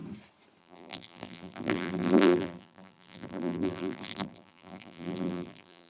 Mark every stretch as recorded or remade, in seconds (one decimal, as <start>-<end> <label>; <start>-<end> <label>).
0.0-0.6 recorded; 0.6-5.9 remade